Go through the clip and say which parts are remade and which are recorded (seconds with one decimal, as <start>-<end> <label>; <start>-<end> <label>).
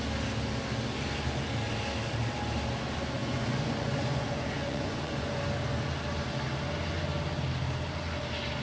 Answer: 0.0-3.2 recorded; 3.2-5.4 remade; 5.4-8.6 recorded